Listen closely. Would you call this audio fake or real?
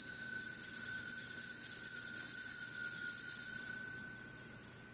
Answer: real